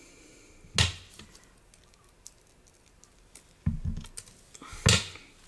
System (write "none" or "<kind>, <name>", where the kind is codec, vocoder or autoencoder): none